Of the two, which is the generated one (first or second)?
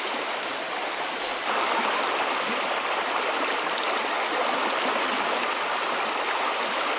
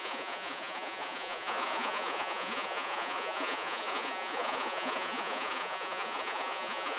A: second